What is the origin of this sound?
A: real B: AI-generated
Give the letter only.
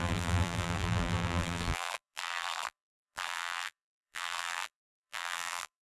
B